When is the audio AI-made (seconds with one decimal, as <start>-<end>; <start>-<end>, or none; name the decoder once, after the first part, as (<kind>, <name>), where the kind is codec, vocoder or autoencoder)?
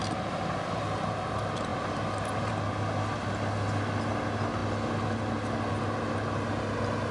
none